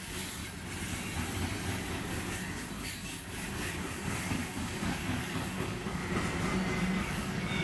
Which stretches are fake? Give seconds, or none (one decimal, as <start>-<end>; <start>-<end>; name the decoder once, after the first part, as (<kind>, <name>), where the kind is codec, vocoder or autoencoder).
0.0-0.4 (codec, DAC); 1.8-6.0; 7.0-7.6